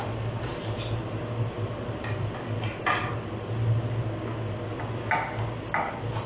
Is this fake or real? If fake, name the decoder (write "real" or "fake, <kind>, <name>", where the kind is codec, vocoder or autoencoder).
real